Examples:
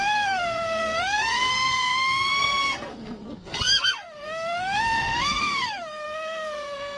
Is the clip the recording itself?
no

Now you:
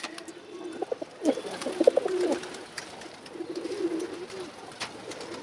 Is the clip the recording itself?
yes